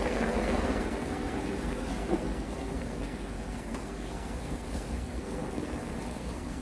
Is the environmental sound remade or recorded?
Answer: remade